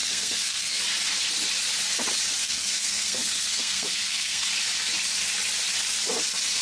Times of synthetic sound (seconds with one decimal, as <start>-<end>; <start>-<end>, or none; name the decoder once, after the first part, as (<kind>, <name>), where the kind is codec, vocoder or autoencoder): 0.0-0.8 (codec, SNAC); 2.4-4.5